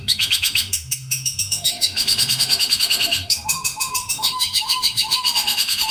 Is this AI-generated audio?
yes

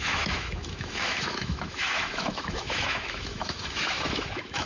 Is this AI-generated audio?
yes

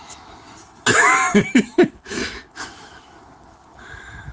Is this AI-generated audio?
yes